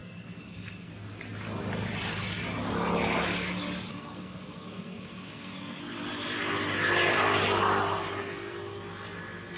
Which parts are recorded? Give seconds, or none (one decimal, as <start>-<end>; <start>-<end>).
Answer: 0.9-3.9; 5.8-8.2; 8.7-9.6

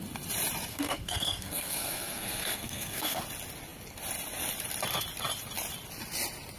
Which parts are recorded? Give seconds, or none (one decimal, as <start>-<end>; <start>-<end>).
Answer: 0.0-0.7; 3.2-6.6